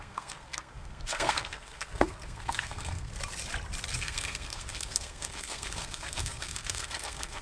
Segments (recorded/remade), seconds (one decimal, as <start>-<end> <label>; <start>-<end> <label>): 0.0-3.1 remade; 3.1-4.0 recorded; 4.0-7.4 remade